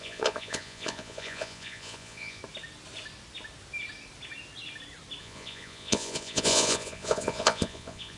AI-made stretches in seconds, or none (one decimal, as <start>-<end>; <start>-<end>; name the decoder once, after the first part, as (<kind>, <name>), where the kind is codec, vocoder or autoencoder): 0.0-2.4 (vocoder, Vocos); 5.2-8.2

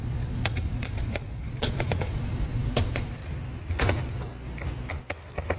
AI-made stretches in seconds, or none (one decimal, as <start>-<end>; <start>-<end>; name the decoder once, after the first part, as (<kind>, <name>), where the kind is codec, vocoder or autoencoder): 0.0-3.2 (vocoder, Vocos)

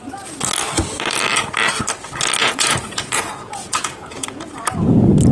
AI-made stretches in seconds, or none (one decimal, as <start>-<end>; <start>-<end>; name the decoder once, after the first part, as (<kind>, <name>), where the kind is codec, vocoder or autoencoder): 2.4-4.5 (vocoder, Vocos)

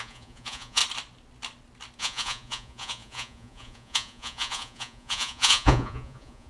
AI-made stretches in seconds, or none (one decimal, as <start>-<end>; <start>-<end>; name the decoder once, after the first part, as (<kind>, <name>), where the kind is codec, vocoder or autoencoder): 0.0-0.8 (vocoder, Vocos); 2.0-6.5

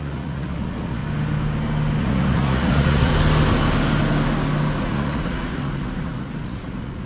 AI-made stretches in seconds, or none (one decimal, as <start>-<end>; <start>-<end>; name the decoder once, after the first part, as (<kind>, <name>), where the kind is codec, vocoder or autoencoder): 0.0-1.0 (vocoder, Vocos); 2.0-3.1; 4.8-7.1